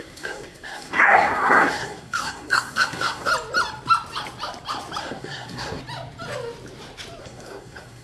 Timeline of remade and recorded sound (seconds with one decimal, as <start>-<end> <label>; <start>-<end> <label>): 0.0-3.3 remade; 3.3-5.0 recorded; 5.0-5.8 remade; 5.8-7.2 recorded; 7.2-8.0 remade